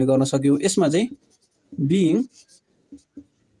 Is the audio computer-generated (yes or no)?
yes